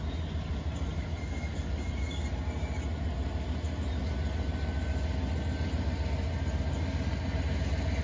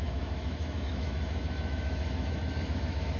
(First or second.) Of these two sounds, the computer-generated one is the second